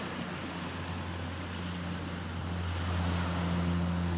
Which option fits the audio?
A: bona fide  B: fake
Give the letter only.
A